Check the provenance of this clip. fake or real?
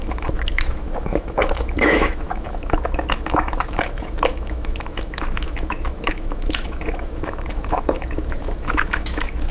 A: fake